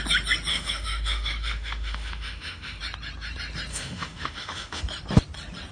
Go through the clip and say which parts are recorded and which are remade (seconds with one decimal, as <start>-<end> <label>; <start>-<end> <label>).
0.0-0.5 recorded; 0.5-2.8 remade; 2.8-3.7 recorded; 3.7-4.8 remade; 4.8-5.7 recorded